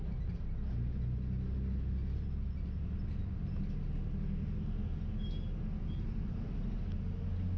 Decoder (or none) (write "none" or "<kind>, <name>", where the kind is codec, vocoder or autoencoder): none